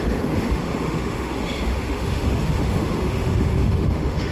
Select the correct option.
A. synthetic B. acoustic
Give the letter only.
A